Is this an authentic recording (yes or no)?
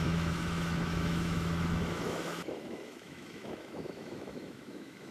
no